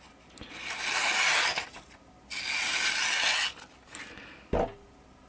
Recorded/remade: recorded